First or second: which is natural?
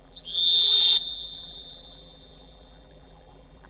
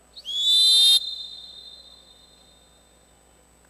second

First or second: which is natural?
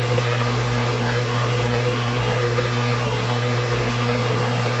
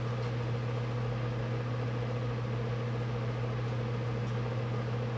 second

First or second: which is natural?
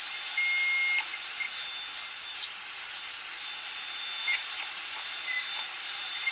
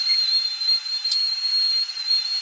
first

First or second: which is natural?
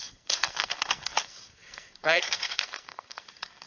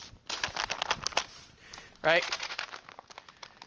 second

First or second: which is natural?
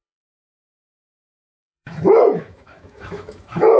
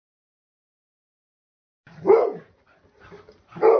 second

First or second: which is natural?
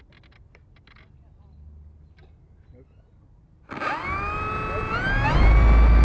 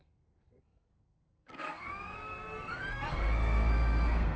first